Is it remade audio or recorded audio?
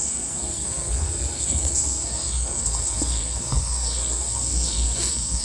remade